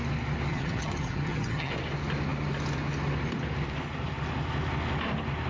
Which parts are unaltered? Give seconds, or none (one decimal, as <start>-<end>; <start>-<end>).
0.0-0.5; 1.7-5.5